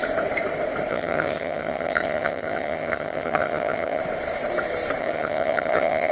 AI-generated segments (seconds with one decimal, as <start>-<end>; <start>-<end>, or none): 0.9-4.0; 5.0-6.1